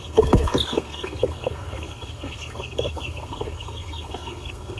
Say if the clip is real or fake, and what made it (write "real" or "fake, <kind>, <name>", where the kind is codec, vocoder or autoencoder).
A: fake, codec, SNAC